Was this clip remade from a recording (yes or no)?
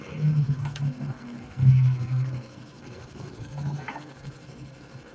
yes